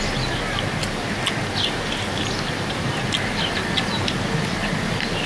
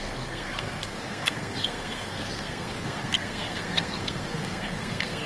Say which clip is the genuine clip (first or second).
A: first